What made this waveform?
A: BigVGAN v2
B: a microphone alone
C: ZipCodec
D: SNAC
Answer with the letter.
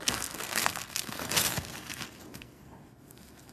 D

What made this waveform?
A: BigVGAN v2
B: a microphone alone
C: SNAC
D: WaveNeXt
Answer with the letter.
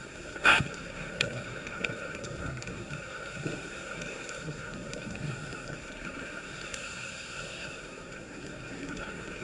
C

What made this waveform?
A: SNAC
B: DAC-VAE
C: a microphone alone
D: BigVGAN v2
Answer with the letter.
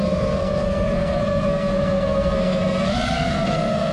A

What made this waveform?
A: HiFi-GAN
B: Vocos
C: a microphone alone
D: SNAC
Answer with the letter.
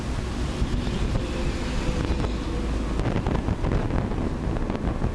C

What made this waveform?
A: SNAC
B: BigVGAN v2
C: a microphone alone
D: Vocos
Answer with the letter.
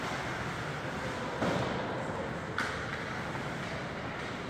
C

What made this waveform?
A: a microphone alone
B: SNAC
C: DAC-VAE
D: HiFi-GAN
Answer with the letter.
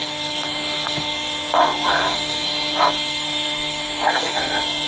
B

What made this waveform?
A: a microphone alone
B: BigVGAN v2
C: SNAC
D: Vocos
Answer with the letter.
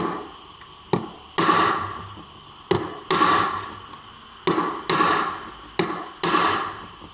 A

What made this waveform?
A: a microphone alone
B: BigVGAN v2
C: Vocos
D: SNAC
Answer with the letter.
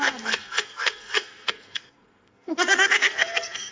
D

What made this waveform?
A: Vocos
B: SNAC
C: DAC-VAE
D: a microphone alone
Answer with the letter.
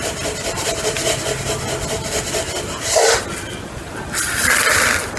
D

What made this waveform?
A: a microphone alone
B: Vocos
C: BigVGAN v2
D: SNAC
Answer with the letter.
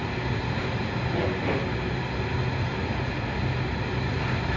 A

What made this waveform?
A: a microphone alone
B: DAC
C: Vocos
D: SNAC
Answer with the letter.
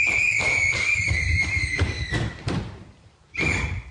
A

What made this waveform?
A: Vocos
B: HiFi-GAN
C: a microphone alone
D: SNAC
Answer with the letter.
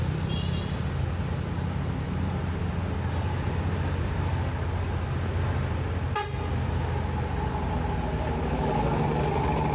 C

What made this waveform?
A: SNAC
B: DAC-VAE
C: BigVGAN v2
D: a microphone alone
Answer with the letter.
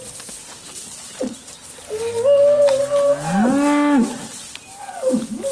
D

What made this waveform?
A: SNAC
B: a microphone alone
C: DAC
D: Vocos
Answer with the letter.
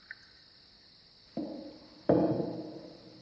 B